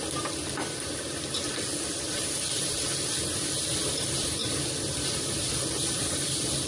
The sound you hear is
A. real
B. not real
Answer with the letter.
A